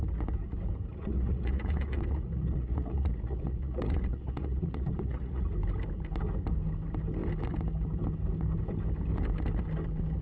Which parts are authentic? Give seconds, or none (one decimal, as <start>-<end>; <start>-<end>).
0.0-0.9; 5.5-10.2